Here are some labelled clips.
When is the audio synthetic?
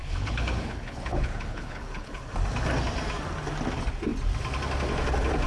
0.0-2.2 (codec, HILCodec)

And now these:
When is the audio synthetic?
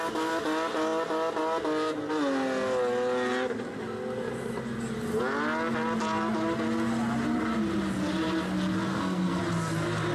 8.9-9.4 (codec, SNAC)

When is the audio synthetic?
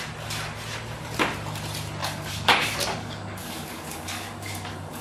2.0-5.0 (codec, DAC)